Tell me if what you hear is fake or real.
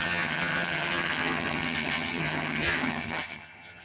fake